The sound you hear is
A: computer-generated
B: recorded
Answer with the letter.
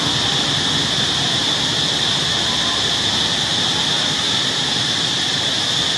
B